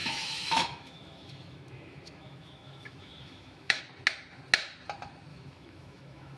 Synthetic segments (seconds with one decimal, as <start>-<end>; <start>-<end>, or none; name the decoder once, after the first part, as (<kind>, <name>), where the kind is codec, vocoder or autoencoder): 0.0-3.8 (autoencoder, DAC-VAE); 5.3-6.4